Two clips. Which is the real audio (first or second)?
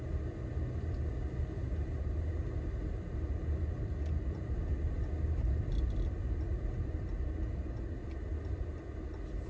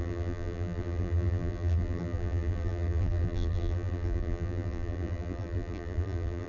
first